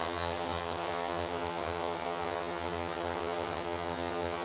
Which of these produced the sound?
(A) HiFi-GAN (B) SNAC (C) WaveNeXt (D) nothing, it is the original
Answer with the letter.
A